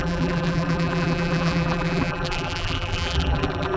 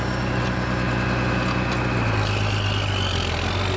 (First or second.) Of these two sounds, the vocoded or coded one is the first